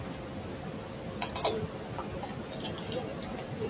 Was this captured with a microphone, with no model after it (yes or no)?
yes